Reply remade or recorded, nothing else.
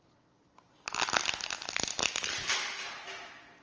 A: recorded